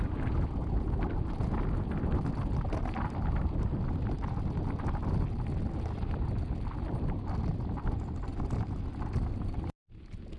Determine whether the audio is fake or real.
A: real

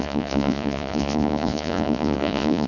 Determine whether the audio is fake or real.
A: fake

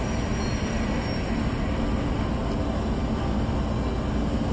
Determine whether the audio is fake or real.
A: real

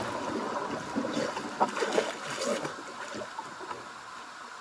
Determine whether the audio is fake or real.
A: real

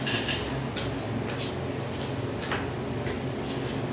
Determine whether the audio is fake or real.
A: real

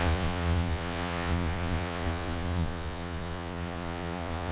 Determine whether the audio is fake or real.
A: fake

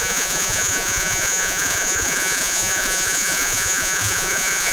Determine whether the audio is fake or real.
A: fake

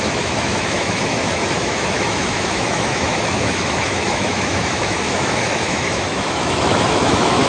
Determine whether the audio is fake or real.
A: fake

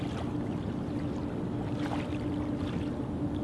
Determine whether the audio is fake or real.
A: real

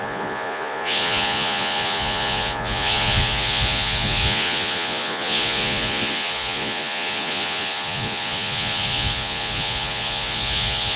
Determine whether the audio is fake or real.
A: fake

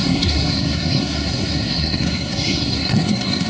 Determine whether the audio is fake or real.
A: fake